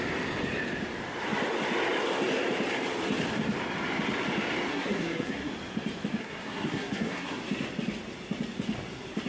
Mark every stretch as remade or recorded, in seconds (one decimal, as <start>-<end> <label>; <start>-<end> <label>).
0.0-4.7 recorded; 4.7-5.5 remade; 5.5-6.2 recorded; 6.2-7.4 remade; 7.4-9.3 recorded